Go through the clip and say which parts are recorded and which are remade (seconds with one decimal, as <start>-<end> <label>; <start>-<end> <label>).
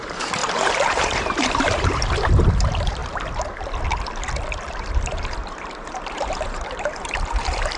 0.0-3.0 remade; 3.0-4.7 recorded; 4.7-7.8 remade